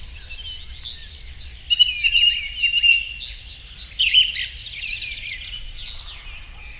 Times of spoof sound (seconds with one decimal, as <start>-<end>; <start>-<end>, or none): 4.6-5.6